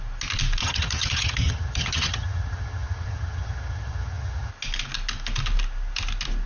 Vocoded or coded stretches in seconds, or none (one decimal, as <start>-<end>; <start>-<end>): 0.6-4.5